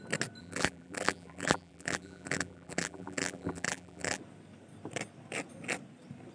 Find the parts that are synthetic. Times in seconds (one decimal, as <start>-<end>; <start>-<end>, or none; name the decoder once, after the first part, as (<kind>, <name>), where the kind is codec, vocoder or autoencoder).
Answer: 0.4-4.2 (vocoder, BigVGAN v2)